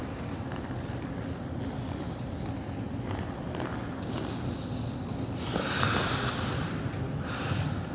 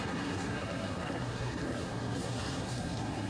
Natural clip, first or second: first